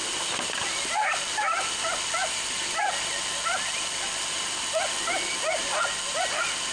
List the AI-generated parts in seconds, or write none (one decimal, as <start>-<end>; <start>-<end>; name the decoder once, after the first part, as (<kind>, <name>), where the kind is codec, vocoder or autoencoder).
none